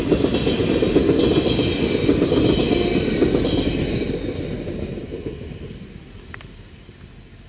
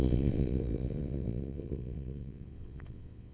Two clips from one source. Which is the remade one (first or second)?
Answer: second